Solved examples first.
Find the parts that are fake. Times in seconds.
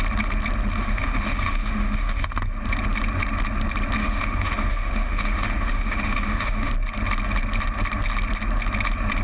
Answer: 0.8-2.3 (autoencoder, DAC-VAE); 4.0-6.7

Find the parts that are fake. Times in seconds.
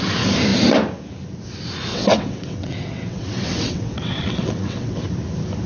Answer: 1.9-5.0 (vocoder, WaveNeXt)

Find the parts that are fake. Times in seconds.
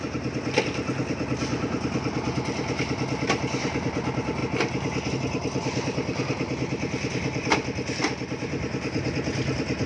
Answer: none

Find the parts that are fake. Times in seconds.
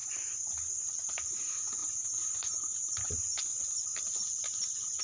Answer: 1.8-3.1 (vocoder, BigVGAN v2); 3.5-5.0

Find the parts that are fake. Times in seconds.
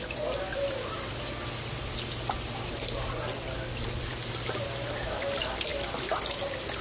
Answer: none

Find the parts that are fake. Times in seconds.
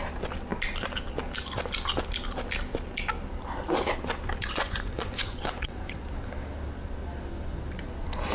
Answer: 4.4-6.0 (vocoder, Vocos)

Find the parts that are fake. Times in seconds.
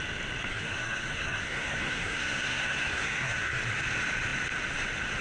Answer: 0.5-3.6 (codec, SNAC)